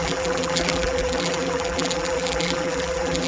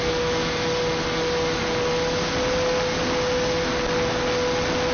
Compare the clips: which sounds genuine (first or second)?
second